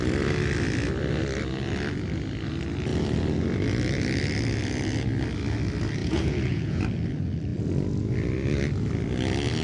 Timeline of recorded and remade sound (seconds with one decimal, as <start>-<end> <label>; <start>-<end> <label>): 0.0-6.0 recorded; 6.0-6.8 remade; 6.8-9.6 recorded